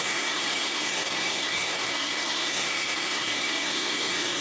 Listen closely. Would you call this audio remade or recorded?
remade